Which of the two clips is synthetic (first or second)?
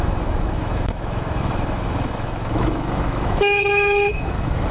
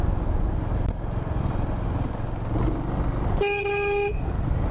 first